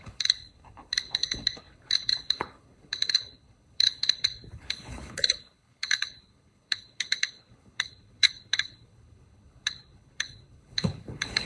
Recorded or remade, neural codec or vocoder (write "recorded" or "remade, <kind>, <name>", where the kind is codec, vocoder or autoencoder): remade, codec, HILCodec